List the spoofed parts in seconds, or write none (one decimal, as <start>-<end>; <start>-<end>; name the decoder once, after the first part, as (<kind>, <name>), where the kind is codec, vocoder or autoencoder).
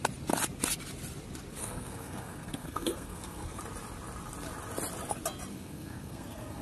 1.6-3.6 (codec, SNAC); 5.5-6.6